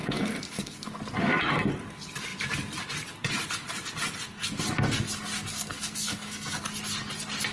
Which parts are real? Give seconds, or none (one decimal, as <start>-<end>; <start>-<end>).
0.9-5.5; 6.6-7.5

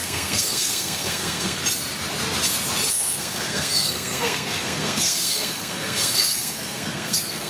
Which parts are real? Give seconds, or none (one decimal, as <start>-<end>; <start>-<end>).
1.6-2.9